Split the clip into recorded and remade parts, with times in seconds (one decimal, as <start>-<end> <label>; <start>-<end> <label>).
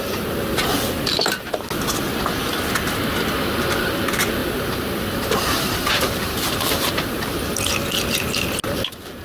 0.0-3.0 recorded; 3.0-3.9 remade; 3.9-4.4 recorded; 4.4-7.6 remade; 7.6-9.2 recorded